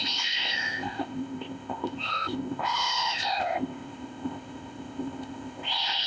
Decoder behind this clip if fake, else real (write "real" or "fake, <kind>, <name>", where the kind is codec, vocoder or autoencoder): fake, codec, ZipCodec